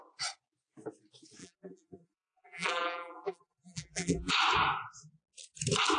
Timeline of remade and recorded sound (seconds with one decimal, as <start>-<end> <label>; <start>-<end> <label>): 0.0-1.4 recorded; 1.4-4.3 remade; 4.3-6.0 recorded